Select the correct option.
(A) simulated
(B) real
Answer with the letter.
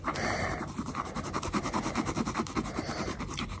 A